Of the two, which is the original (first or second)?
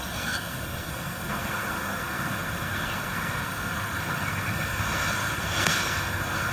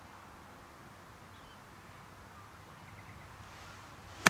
second